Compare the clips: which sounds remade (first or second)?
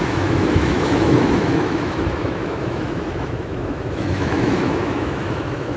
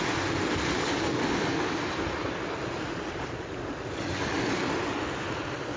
first